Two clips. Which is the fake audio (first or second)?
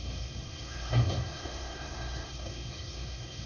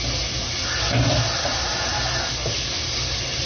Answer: first